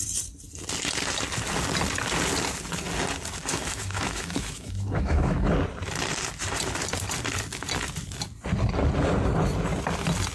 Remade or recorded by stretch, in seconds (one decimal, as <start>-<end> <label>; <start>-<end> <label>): 0.0-3.5 recorded; 3.5-5.5 remade; 5.5-10.3 recorded